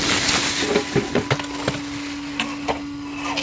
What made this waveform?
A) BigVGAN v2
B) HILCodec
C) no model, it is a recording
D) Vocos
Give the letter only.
C